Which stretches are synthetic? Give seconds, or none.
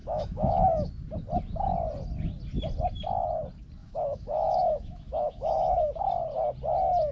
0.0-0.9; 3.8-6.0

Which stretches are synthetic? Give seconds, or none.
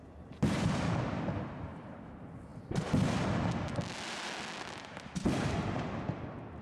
none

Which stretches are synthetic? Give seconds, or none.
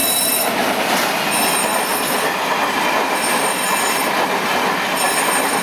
0.0-0.8; 1.9-5.0